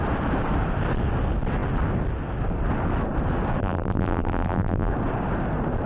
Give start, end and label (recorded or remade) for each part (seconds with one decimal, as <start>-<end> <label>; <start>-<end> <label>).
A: 0.0-3.6 recorded; 3.6-4.9 remade; 4.9-5.9 recorded